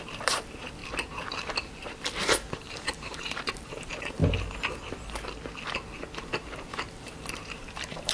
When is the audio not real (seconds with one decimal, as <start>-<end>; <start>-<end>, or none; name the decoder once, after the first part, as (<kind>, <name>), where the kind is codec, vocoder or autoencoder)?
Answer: 0.0-0.8 (vocoder, BigVGAN v2); 2.6-4.2; 6.7-8.1